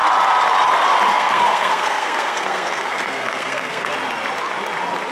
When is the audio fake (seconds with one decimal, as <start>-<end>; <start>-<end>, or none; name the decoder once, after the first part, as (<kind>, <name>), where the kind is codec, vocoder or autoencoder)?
1.1-3.9 (codec, SNAC)